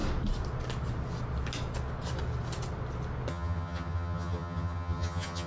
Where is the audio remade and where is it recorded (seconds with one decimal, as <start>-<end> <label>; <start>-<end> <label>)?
0.0-3.3 recorded; 3.3-5.5 remade